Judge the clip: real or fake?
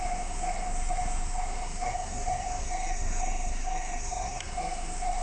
fake